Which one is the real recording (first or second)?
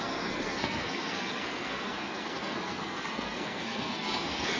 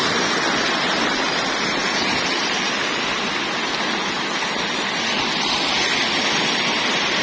second